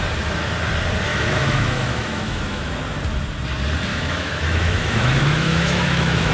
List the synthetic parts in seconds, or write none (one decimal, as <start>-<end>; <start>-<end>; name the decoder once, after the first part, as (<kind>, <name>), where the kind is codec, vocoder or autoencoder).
1.1-2.7 (autoencoder, DAC-VAE); 3.9-6.3